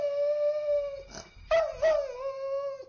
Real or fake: real